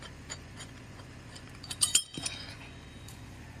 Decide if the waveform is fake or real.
fake